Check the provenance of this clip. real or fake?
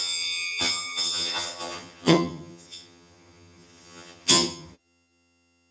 fake